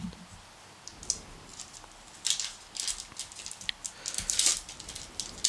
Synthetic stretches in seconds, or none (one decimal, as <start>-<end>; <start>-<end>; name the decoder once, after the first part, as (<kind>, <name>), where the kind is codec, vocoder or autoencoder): none